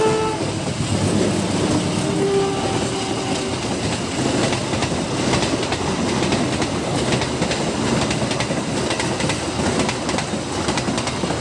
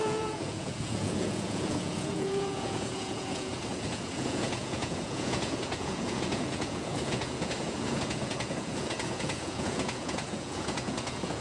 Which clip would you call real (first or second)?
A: first